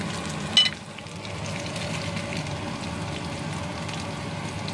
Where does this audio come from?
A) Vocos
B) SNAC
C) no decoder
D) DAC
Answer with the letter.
C